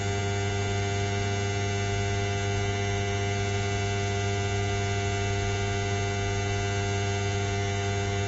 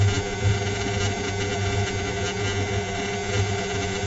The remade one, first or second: second